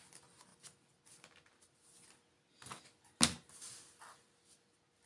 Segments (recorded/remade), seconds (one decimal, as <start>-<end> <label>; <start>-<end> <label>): 0.0-5.1 recorded